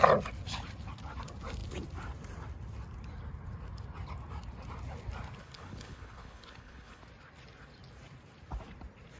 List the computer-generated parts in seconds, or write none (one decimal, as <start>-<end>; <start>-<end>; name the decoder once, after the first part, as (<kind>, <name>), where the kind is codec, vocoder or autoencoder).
5.4-7.0 (codec, HILCodec)